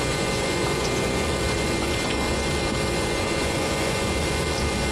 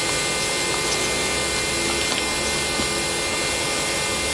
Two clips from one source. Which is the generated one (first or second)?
first